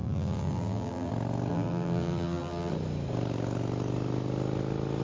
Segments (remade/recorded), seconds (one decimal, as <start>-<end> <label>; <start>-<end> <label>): 0.0-1.1 remade; 1.1-1.5 recorded; 1.5-2.7 remade; 2.7-5.0 recorded